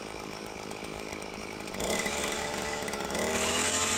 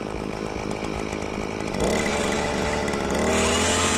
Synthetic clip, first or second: first